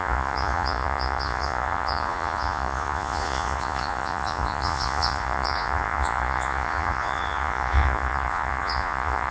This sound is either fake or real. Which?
fake